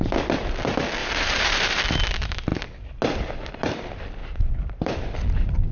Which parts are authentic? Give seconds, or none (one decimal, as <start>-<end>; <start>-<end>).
0.0-1.0; 1.8-4.2